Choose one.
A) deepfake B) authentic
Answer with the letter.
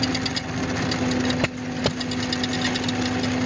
B